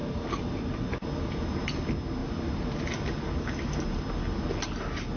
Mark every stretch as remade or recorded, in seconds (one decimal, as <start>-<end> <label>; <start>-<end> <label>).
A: 0.0-0.6 remade; 0.6-2.2 recorded; 2.2-2.8 remade; 2.8-5.2 recorded